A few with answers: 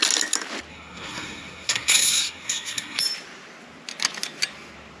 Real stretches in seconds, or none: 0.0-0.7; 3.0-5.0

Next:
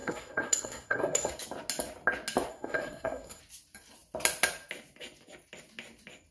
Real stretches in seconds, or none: 1.3-2.5; 3.4-6.3

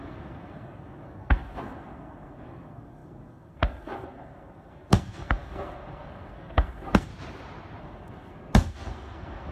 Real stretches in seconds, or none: 7.1-7.8

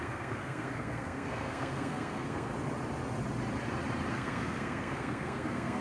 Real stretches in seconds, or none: 2.5-4.1

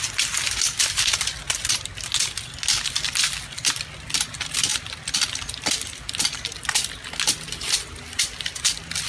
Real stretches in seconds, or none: 0.0-9.1

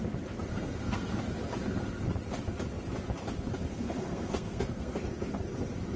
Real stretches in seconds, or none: 0.0-0.5; 1.2-3.7; 5.0-6.0